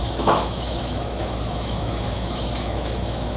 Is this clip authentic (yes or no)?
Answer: no